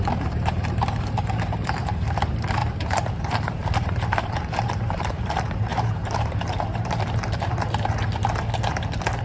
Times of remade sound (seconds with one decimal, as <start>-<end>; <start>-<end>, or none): 0.0-8.1